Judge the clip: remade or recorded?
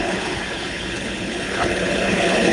remade